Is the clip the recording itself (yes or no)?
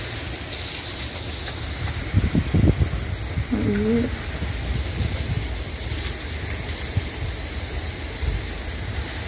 yes